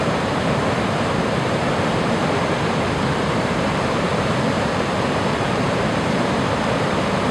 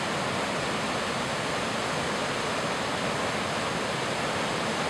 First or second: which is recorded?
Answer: second